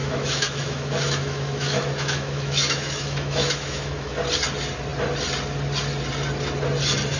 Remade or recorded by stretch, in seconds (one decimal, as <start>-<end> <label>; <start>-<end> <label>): 0.0-4.2 remade; 4.2-7.2 recorded